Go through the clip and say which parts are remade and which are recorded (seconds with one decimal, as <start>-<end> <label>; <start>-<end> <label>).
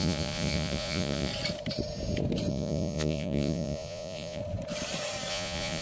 0.0-1.3 remade; 1.3-2.5 recorded; 2.5-4.4 remade; 4.4-5.3 recorded; 5.3-5.8 remade